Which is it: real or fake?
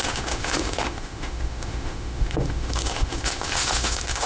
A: fake